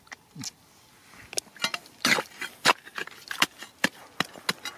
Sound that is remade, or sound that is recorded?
recorded